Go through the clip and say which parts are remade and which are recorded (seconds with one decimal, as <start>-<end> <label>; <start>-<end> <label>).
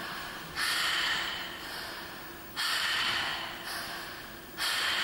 0.0-3.3 remade; 3.3-4.4 recorded; 4.4-5.0 remade